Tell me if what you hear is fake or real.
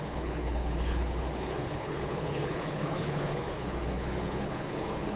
fake